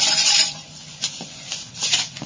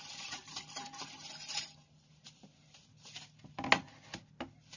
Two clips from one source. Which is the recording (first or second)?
second